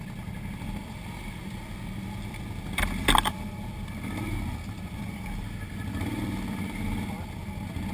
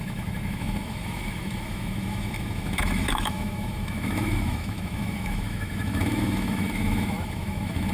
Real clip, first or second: first